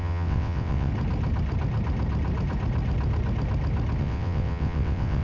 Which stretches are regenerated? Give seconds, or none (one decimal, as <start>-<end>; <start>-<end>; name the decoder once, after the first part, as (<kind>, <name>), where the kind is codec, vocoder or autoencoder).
0.0-0.9 (vocoder, WaveNeXt); 4.0-5.2